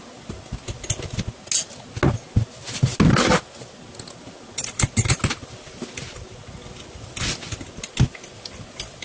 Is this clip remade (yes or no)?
no